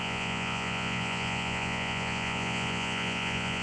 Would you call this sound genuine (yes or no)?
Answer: no